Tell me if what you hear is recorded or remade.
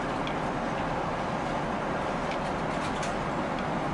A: remade